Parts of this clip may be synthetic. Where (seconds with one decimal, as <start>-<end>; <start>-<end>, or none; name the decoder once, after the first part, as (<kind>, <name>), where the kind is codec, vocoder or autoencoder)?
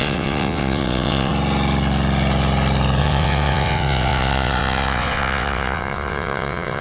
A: 0.0-1.3 (vocoder, WaveNeXt); 3.0-6.8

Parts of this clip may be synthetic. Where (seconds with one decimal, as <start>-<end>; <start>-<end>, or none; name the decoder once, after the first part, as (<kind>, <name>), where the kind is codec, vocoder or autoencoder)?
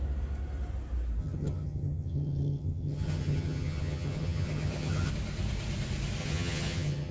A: 1.2-5.1 (vocoder, HiFi-GAN); 6.2-7.1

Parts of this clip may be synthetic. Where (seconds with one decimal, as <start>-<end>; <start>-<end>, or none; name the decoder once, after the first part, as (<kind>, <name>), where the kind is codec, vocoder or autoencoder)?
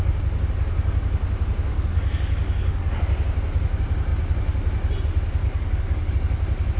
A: 1.7-3.0 (codec, DAC); 5.4-6.1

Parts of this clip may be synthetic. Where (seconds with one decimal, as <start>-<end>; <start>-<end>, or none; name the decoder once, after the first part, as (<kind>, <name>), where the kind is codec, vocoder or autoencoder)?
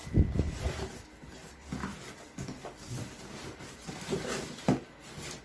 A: none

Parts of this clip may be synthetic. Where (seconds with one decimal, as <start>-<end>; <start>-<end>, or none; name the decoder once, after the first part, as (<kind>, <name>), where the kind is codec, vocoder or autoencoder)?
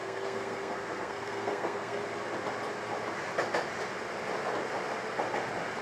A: 0.0-2.0 (codec, SNAC)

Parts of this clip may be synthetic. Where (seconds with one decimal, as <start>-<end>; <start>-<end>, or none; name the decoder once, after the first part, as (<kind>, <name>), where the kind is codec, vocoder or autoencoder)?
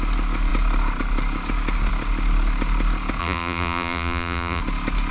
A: 3.2-4.6 (vocoder, BigVGAN v2)